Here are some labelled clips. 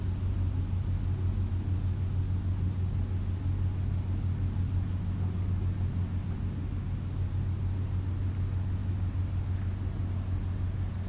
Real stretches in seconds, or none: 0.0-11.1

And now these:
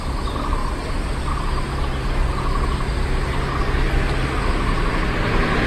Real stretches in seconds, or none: 0.0-5.7

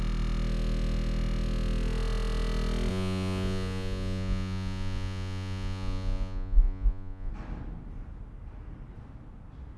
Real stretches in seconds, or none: 0.0-2.9; 7.3-9.8

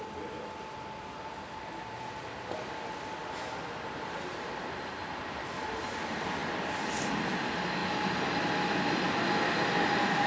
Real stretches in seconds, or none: 0.0-10.3